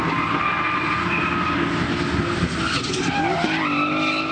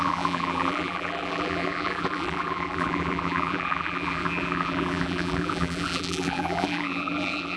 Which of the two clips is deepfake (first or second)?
second